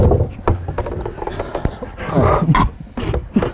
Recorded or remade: recorded